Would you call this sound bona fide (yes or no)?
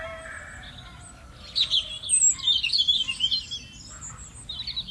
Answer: yes